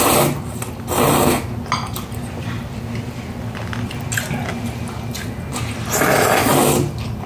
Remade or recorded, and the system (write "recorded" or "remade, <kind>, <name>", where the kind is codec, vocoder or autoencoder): recorded